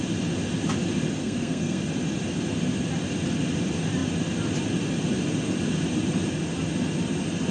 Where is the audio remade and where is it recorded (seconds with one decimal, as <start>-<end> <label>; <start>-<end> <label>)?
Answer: 0.0-1.2 recorded; 1.2-1.8 remade; 1.8-7.5 recorded